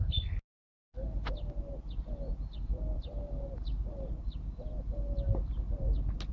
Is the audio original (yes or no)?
yes